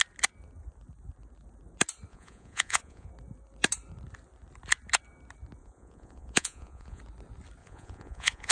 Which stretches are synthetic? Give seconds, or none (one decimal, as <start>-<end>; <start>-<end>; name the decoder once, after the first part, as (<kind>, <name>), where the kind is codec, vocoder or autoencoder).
2.1-3.1 (vocoder, Vocos); 5.6-7.0; 7.6-8.5